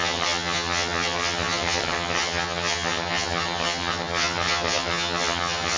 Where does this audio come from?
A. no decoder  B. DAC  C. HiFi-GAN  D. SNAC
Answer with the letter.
C